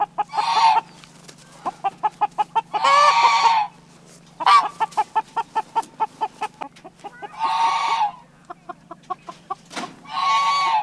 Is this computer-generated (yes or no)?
no